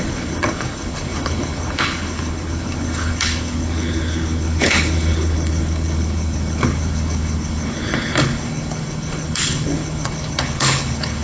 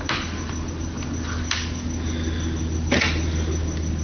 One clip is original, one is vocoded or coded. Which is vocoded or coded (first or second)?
first